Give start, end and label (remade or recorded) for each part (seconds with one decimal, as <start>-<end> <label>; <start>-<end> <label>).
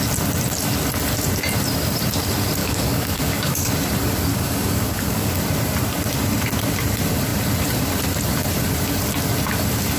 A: 0.0-2.6 recorded; 2.6-3.7 remade; 3.7-4.3 recorded; 4.3-5.3 remade; 5.3-10.0 recorded